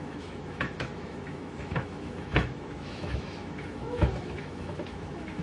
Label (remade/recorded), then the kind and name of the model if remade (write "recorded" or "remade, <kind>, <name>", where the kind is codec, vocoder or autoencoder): remade, autoencoder, DAC-VAE